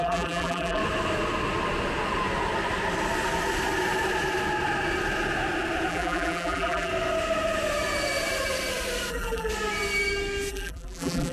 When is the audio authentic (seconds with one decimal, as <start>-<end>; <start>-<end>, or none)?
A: 0.8-5.9; 6.9-9.1; 9.5-10.5